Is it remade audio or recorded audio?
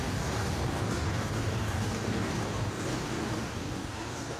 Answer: remade